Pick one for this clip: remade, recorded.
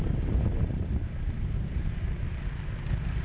recorded